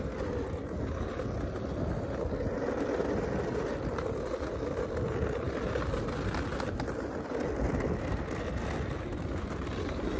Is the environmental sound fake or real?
real